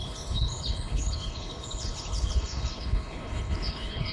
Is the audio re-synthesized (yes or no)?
yes